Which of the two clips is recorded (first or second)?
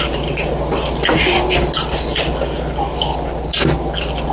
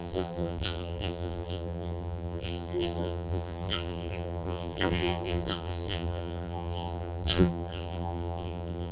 first